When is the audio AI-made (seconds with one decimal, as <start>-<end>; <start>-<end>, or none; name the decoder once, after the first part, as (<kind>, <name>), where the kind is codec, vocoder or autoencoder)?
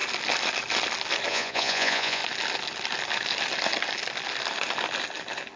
1.3-2.2 (vocoder, Vocos)